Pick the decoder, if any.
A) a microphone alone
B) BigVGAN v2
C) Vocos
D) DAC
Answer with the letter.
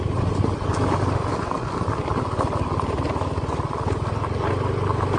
A